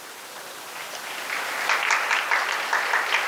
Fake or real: real